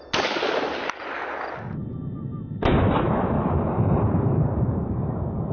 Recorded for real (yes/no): yes